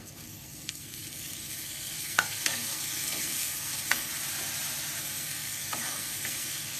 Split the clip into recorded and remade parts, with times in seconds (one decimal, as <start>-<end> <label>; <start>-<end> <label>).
0.0-4.1 remade; 4.1-5.0 recorded; 5.0-6.8 remade